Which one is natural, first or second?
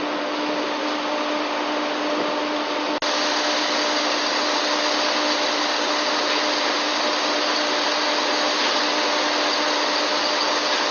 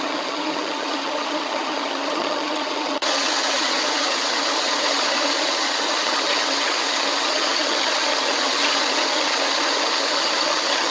first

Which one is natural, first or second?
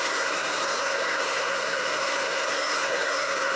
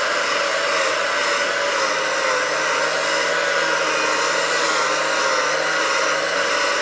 second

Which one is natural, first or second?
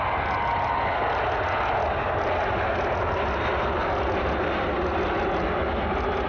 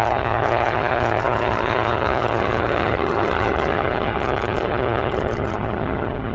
first